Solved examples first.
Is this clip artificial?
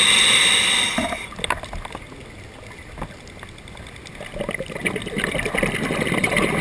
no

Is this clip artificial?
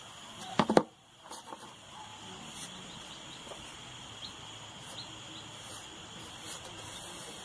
no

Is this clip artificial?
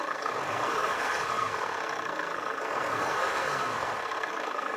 yes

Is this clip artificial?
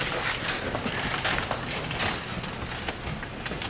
no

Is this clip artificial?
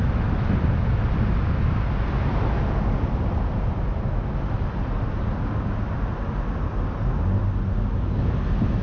no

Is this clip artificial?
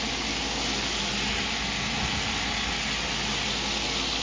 no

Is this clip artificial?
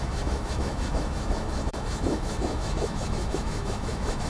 yes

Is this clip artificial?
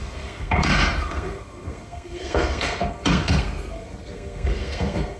yes